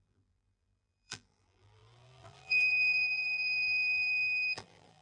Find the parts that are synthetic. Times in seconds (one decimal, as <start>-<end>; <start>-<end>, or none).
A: 0.0-5.0